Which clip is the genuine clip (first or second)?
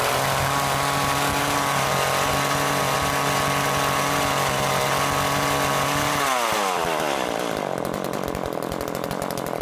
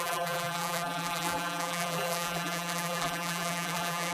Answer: first